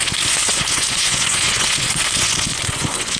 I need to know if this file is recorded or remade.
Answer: remade